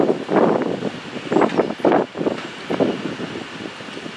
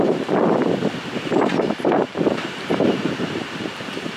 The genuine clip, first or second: first